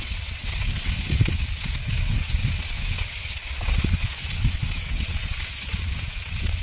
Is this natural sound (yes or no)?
no